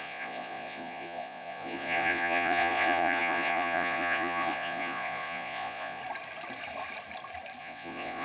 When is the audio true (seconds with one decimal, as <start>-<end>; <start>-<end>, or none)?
6.0-7.6